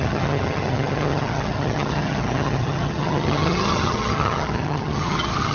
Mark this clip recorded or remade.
remade